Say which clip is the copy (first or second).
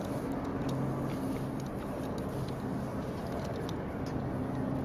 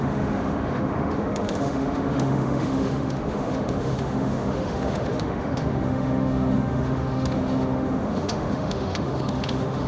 second